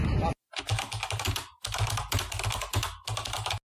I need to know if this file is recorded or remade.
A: recorded